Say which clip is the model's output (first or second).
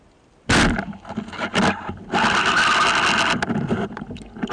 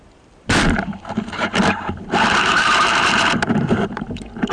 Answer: second